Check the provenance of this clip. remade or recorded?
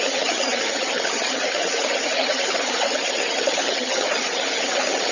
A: remade